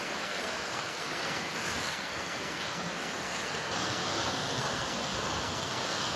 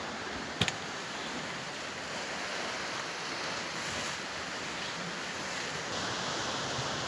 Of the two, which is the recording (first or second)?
second